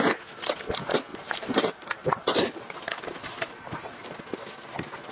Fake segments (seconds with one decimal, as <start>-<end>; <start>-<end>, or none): 1.1-4.2